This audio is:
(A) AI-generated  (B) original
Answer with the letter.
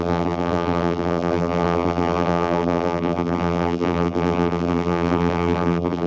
A